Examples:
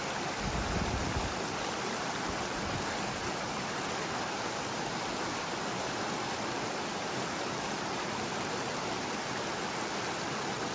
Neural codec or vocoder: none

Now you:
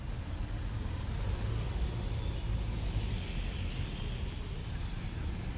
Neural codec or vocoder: none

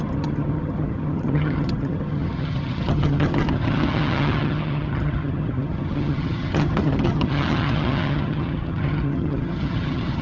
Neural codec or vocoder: vocoder, HiFi-GAN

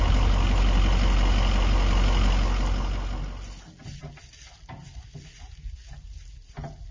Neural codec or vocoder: none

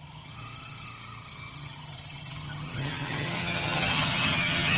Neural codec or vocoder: vocoder, HiFi-GAN